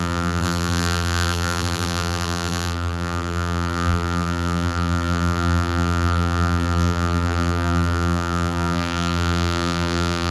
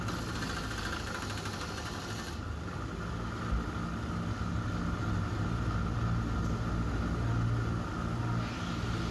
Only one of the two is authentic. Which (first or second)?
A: second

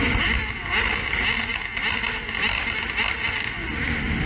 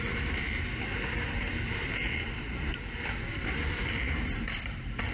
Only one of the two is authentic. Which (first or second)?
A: first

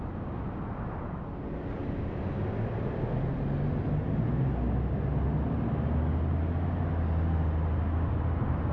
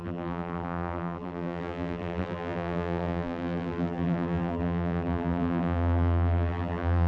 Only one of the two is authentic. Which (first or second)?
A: first